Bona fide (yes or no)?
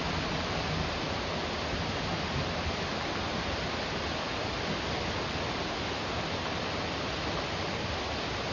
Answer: yes